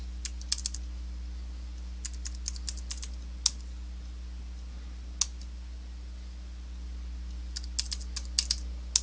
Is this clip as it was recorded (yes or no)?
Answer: yes